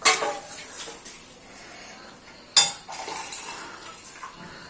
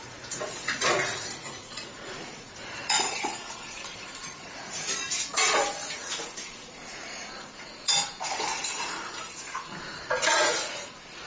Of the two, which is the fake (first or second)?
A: second